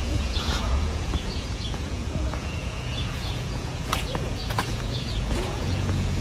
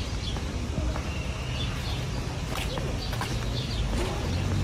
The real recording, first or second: second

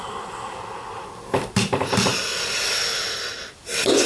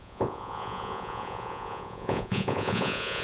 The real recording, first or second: first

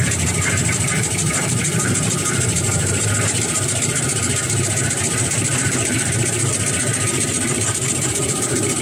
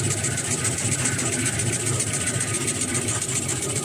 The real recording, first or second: second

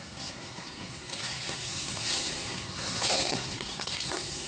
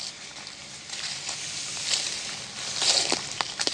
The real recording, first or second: second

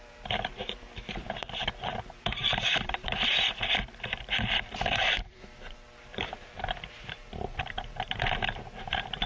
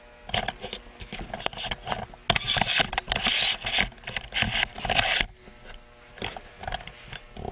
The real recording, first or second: second